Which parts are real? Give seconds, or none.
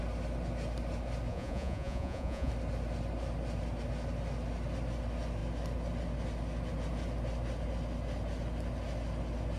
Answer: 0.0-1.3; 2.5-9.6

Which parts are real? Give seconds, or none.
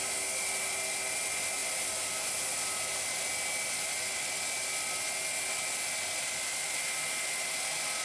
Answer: 0.0-8.0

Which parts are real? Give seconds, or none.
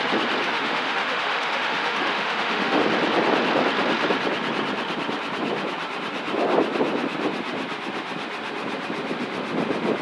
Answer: 0.0-0.4; 2.8-10.0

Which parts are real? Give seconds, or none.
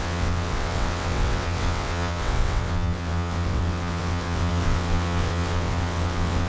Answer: none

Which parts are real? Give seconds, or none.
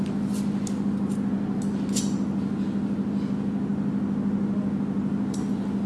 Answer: 0.0-5.9